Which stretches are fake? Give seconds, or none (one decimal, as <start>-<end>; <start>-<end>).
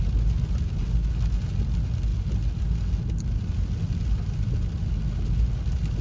none